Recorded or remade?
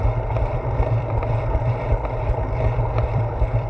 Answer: remade